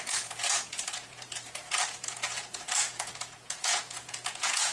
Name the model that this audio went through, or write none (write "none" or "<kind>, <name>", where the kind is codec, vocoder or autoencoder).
vocoder, Vocos